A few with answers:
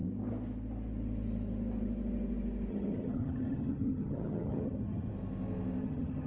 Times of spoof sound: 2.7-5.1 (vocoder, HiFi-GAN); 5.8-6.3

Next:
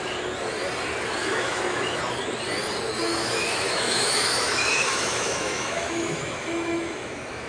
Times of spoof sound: 1.2-2.0 (autoencoder, DAC-VAE); 3.0-7.5